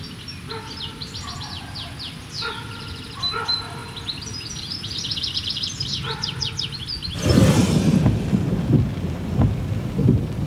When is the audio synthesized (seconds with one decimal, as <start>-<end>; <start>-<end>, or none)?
0.0-3.8; 4.6-7.6; 9.8-10.5